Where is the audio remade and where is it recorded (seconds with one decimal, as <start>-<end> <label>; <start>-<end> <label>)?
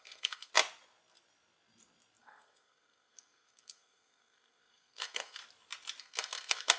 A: 0.0-0.5 remade; 0.5-2.2 recorded; 2.2-5.4 remade; 5.4-6.0 recorded; 6.0-6.8 remade